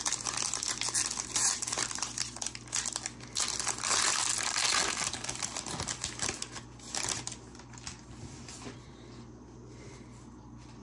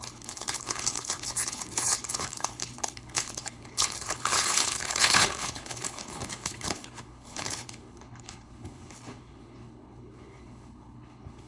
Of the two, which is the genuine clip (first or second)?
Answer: first